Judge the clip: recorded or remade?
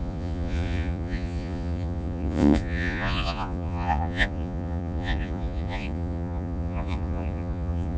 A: remade